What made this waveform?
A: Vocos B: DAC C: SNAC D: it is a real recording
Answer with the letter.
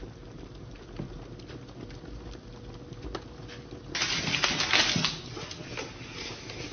D